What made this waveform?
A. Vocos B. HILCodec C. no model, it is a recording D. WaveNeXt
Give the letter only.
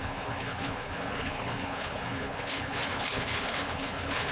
B